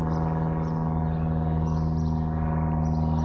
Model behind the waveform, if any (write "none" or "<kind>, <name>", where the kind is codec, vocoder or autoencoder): none